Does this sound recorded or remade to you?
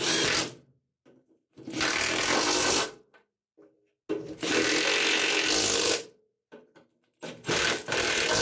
recorded